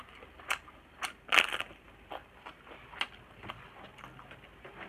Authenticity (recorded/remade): recorded